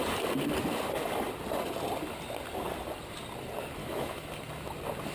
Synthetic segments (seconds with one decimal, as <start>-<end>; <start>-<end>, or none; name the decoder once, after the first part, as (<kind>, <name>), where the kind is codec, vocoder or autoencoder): 3.8-4.3 (autoencoder, DAC-VAE)